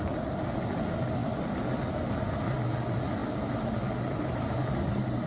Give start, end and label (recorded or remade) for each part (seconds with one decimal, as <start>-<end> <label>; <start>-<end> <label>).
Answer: 0.0-5.3 recorded